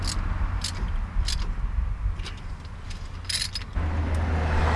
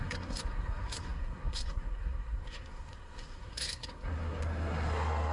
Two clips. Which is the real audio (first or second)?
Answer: first